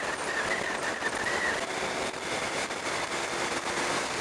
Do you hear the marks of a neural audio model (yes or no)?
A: no